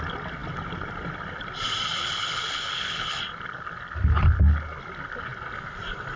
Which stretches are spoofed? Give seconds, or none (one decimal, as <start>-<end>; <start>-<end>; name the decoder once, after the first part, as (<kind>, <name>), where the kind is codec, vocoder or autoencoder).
2.0-3.2 (codec, HILCodec)